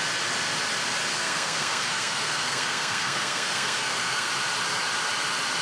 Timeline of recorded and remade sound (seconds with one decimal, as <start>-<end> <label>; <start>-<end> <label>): 0.0-1.1 recorded; 1.1-4.3 remade; 4.3-5.6 recorded